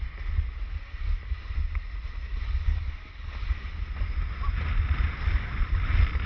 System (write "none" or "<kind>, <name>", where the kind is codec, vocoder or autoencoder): none